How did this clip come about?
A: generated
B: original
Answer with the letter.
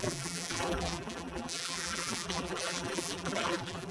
A